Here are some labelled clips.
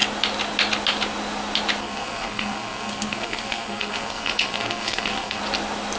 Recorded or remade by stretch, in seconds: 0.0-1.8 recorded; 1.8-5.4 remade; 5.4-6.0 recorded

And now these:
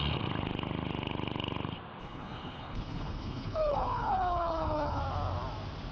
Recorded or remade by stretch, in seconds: 0.0-2.0 recorded; 2.0-5.0 remade; 5.0-5.9 recorded

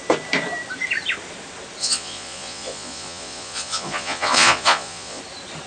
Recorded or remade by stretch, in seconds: 0.0-1.8 recorded; 1.8-5.2 remade; 5.2-5.7 recorded

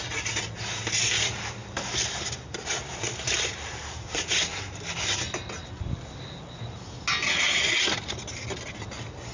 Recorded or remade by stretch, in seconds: 0.0-1.6 recorded; 1.6-4.4 remade; 4.4-9.3 recorded

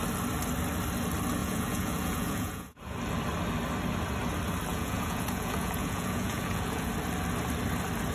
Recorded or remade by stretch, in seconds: 0.0-1.4 recorded; 1.4-2.8 remade; 2.8-4.7 recorded; 4.7-6.9 remade; 6.9-8.1 recorded